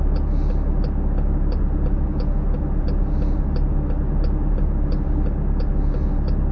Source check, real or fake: real